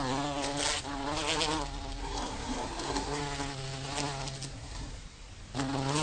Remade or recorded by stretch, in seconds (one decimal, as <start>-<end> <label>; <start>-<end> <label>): 0.0-2.0 recorded; 2.0-3.2 remade; 3.2-4.5 recorded; 4.5-5.3 remade; 5.3-6.0 recorded